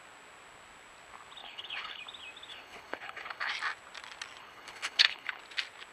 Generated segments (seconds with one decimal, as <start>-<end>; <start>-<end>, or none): 1.4-2.0; 2.5-3.5; 4.4-5.4